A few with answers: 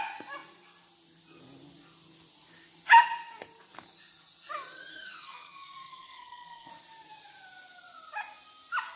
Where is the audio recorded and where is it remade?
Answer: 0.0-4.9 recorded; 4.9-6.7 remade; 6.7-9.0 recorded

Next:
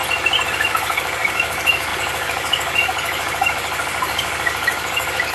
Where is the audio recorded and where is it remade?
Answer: 0.0-0.5 recorded; 0.5-5.3 remade

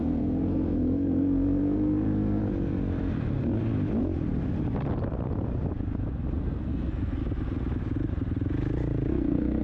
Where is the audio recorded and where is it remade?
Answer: 0.0-2.4 remade; 2.4-6.4 recorded; 6.4-7.2 remade; 7.2-9.1 recorded; 9.1-9.6 remade

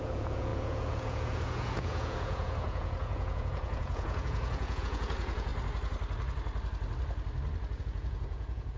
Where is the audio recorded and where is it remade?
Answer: 0.0-5.5 remade; 5.5-7.8 recorded; 7.8-8.8 remade

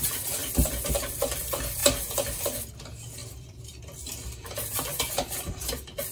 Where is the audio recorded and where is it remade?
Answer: 0.0-0.4 recorded; 0.4-0.9 remade; 0.9-3.2 recorded; 3.2-5.5 remade; 5.5-6.1 recorded

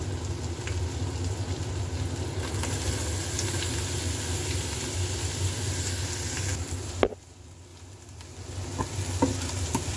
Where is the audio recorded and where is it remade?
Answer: 0.0-6.5 recorded; 6.5-7.3 remade; 7.3-10.0 recorded

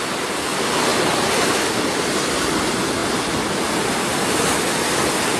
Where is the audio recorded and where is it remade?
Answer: 0.0-5.4 recorded